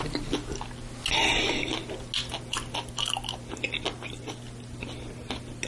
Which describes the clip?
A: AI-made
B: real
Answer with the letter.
B